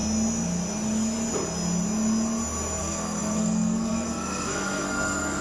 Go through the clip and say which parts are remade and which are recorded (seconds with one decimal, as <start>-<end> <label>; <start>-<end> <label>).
0.0-2.8 recorded; 2.8-5.4 remade